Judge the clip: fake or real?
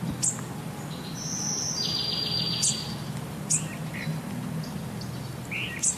real